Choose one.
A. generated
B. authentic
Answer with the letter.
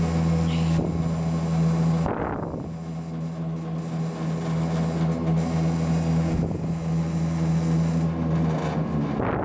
B